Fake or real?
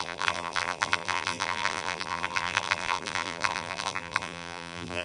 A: fake